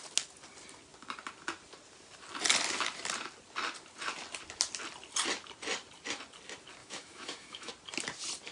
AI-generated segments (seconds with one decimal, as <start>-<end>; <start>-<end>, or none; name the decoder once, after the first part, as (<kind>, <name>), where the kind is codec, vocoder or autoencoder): 6.8-7.7 (autoencoder, DAC-VAE)